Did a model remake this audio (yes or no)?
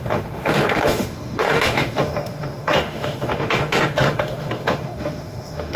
yes